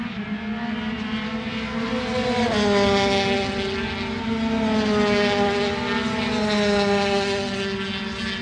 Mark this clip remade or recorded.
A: recorded